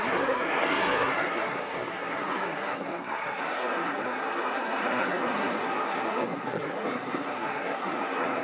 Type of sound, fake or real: fake